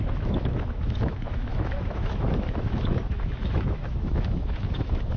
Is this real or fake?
fake